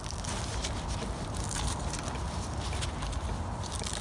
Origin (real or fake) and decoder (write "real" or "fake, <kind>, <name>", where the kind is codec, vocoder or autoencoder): real